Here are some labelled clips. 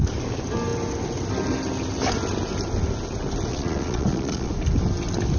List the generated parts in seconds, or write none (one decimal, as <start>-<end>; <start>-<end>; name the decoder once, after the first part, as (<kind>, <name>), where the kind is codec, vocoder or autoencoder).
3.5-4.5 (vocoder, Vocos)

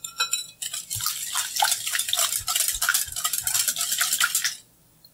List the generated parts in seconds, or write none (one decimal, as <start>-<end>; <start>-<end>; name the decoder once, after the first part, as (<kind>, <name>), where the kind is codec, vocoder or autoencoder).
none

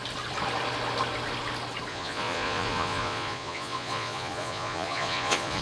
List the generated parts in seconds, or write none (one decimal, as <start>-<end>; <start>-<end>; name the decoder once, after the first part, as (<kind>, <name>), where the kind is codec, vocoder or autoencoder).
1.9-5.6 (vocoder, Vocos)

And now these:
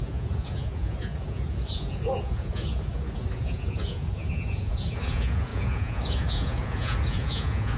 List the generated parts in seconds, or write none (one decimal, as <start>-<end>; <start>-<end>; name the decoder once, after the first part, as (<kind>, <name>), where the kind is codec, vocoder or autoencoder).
0.0-7.8 (vocoder, Vocos)